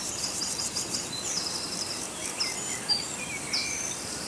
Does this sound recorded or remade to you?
remade